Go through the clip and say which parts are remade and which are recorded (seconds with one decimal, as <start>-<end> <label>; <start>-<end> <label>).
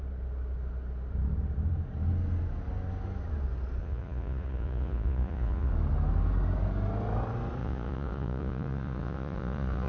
0.0-3.8 recorded; 3.8-5.7 remade; 5.7-7.6 recorded; 7.6-9.9 remade